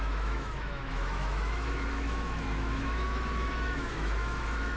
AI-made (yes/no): yes